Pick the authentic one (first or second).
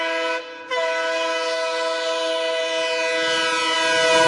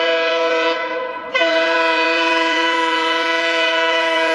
first